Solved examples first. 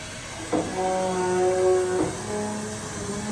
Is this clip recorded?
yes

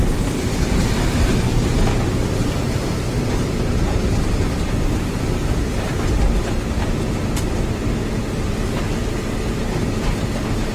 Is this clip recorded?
yes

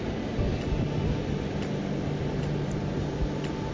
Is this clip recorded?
yes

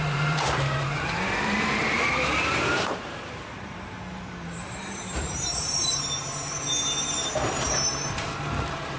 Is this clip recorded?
no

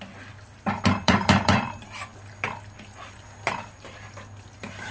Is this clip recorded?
no